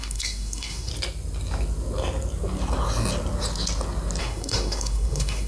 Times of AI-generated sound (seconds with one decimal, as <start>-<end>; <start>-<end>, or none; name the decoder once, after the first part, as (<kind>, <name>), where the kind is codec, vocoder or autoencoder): 0.0-0.9 (codec, SNAC); 4.2-5.5